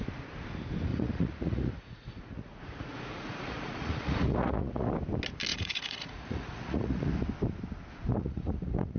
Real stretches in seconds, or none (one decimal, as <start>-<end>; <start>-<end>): 0.0-0.9; 4.9-5.5; 7.1-8.1